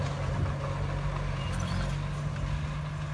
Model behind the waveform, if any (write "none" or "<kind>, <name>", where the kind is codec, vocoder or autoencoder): none